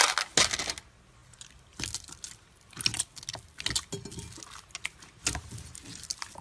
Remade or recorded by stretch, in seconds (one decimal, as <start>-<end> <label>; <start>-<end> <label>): 0.0-6.4 recorded

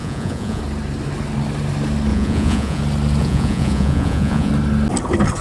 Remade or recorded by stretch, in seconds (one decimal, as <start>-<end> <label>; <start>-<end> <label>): 0.0-0.6 remade; 0.6-2.1 recorded; 2.1-2.8 remade; 2.8-3.2 recorded; 3.2-4.5 remade; 4.5-5.4 recorded

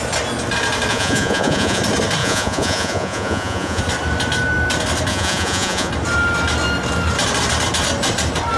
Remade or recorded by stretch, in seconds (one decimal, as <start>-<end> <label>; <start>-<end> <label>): 0.0-0.9 recorded; 0.9-1.8 remade; 1.8-2.2 recorded; 2.2-3.8 remade; 3.8-5.1 recorded; 5.1-5.9 remade; 5.9-8.6 recorded

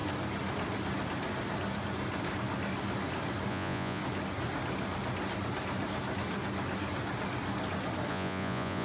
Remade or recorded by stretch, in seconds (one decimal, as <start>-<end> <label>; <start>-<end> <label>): 0.0-3.5 recorded; 3.5-4.0 remade; 4.0-8.1 recorded; 8.1-8.8 remade

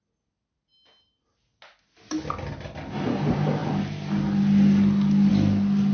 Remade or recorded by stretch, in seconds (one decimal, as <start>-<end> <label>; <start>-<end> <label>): 0.0-5.9 recorded

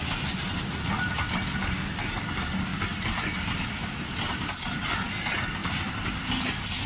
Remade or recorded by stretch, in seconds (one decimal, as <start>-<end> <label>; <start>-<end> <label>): 0.0-6.9 recorded